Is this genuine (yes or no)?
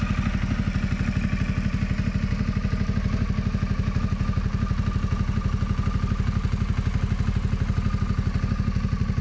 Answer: yes